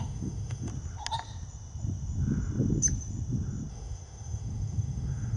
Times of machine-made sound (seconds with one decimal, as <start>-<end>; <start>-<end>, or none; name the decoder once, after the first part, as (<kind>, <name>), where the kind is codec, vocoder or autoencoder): 0.0-0.7 (autoencoder, DAC-VAE); 3.7-5.4